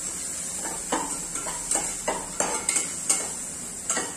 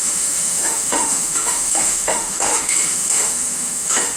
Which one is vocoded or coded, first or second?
second